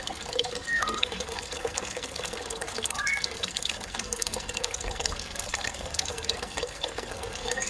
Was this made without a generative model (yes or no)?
no